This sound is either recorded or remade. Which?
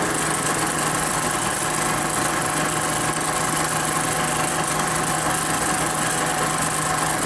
recorded